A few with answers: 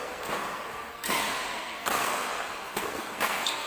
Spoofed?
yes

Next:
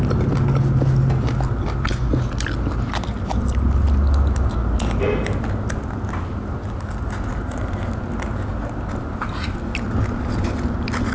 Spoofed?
no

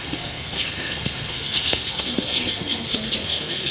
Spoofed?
yes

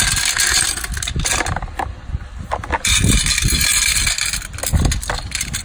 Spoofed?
no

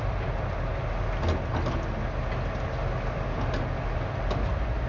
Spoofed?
no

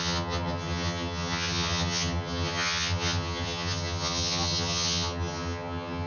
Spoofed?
yes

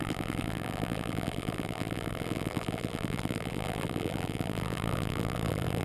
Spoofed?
yes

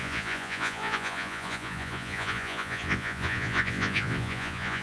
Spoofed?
yes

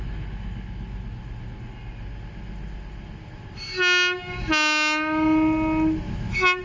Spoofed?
no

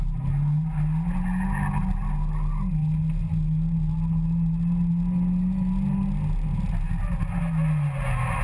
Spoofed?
no